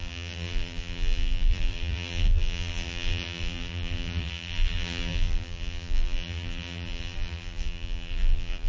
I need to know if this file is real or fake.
fake